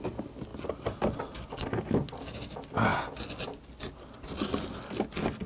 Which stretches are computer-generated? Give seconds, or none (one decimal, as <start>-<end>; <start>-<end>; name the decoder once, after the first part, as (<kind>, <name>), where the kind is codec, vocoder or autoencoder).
none